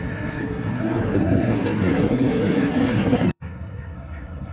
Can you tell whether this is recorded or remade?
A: remade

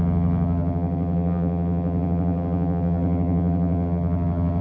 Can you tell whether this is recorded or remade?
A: remade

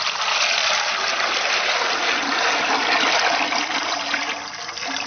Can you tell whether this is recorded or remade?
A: recorded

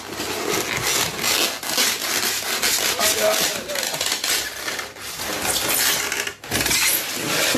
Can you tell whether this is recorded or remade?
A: recorded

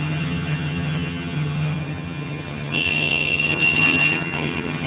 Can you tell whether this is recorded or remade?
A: remade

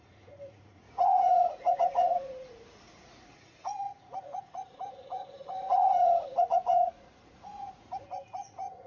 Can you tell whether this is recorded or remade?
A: remade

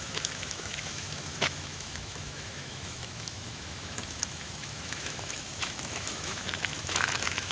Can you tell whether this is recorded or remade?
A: remade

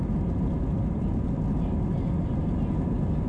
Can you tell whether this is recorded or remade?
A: recorded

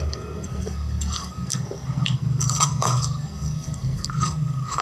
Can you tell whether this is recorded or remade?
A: remade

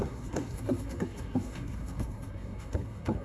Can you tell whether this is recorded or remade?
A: remade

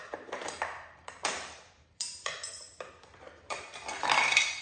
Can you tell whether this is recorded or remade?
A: remade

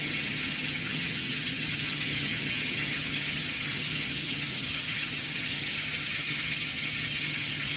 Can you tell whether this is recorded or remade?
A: remade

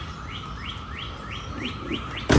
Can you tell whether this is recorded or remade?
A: recorded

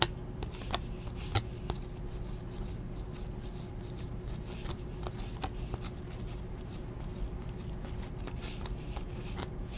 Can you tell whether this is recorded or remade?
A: recorded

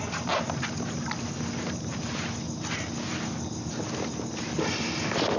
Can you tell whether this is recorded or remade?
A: recorded